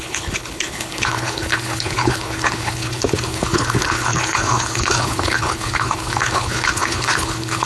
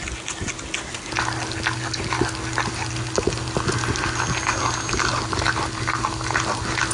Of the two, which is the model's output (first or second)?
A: first